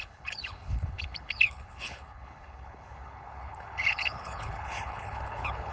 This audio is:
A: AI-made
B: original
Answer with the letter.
A